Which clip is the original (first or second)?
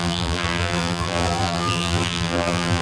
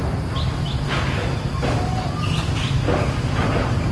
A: second